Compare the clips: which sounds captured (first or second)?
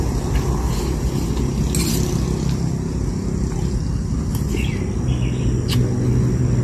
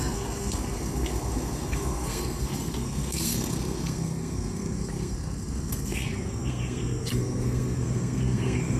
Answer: first